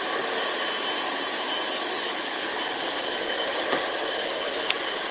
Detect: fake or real fake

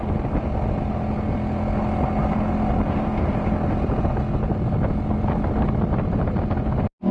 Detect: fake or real real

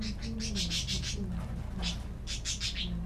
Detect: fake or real real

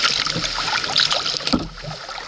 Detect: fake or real real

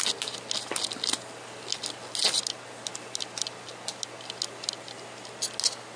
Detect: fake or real real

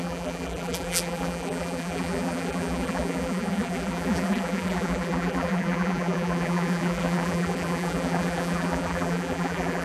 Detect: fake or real fake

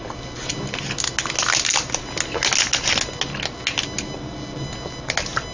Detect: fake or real real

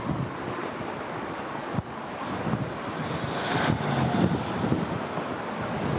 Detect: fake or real real